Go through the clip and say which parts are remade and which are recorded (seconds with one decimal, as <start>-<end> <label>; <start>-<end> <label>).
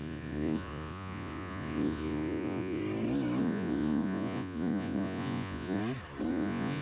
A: 0.0-2.8 remade; 2.8-3.4 recorded; 3.4-5.8 remade; 5.8-6.3 recorded; 6.3-6.8 remade